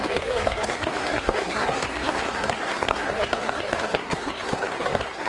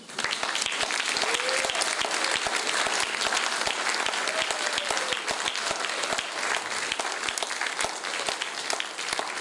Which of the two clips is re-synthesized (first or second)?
first